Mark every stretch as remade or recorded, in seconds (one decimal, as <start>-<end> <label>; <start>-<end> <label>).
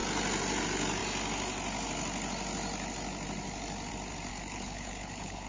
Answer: 0.0-4.3 recorded; 4.3-5.5 remade